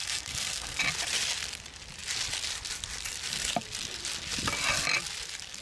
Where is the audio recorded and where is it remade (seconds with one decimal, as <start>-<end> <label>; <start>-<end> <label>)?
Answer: 0.0-0.8 remade; 0.8-5.6 recorded